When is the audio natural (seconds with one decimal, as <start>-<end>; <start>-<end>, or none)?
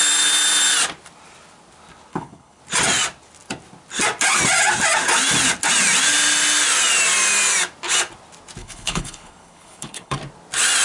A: 0.0-2.1; 2.6-8.6; 10.2-10.8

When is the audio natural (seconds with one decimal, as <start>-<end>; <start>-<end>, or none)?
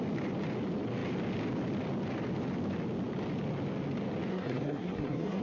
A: 0.0-4.3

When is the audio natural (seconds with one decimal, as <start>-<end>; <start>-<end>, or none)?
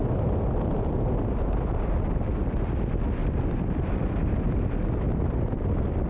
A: 2.5-3.2; 4.7-6.1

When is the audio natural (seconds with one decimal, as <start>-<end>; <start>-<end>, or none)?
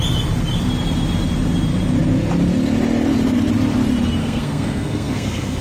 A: 0.0-4.2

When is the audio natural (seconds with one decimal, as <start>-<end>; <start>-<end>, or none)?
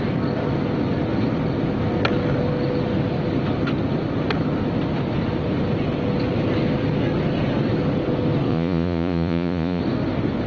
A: 0.0-8.5; 9.8-10.5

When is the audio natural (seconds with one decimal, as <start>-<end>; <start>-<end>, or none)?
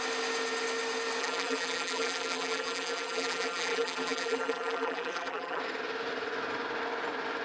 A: 0.0-1.2; 5.6-7.4